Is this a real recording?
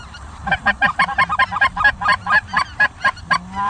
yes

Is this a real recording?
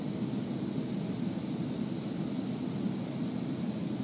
yes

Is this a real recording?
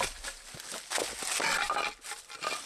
yes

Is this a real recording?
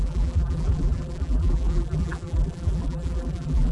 no